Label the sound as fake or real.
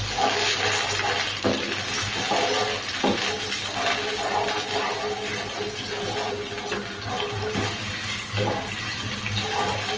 real